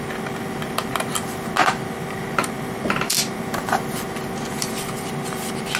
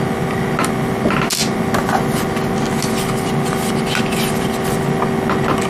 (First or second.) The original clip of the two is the second